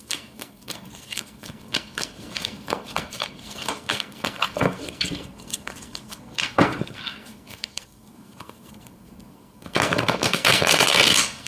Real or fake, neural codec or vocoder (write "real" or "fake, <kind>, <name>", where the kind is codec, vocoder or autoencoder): fake, codec, SNAC